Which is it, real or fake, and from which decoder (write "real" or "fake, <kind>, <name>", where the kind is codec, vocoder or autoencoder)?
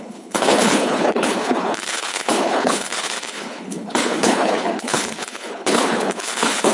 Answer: fake, codec, HILCodec